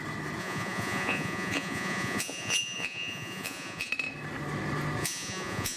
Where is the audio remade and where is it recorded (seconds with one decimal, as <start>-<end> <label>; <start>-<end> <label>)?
0.0-0.4 recorded; 0.4-3.9 remade; 3.9-5.0 recorded; 5.0-5.8 remade